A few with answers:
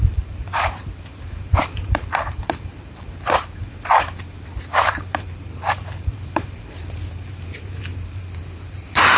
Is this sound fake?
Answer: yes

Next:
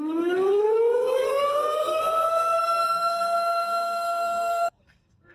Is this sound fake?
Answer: yes